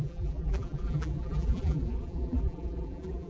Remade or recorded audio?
remade